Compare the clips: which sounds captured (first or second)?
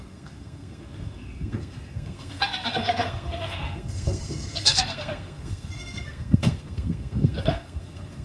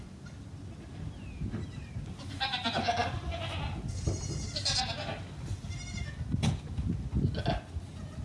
second